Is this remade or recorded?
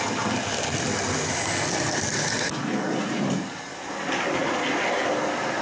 recorded